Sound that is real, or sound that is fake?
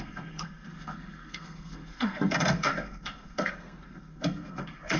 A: fake